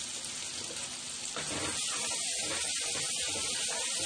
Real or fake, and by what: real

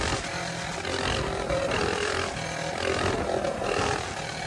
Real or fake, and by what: real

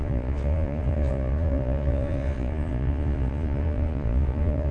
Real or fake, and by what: fake, vocoder, Vocos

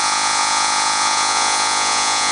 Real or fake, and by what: fake, vocoder, Vocos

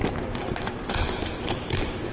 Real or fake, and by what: real